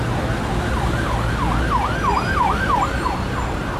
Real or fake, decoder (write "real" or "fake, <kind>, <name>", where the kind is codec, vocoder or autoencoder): real